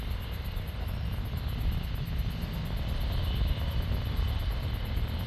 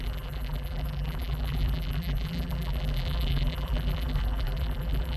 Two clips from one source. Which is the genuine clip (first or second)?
first